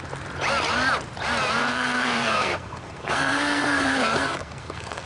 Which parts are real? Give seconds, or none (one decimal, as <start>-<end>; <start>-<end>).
0.0-1.6